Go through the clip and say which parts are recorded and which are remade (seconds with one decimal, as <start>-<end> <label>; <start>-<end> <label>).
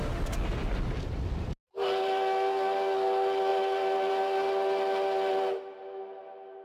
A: 0.0-6.6 recorded